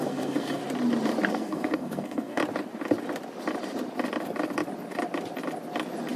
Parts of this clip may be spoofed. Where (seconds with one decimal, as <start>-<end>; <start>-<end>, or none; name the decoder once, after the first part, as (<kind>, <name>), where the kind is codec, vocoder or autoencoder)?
0.0-0.6 (codec, SNAC); 1.3-2.4